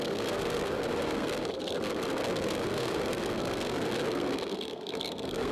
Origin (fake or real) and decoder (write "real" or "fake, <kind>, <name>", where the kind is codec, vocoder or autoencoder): fake, codec, SNAC